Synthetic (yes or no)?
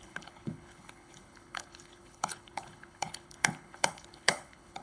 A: yes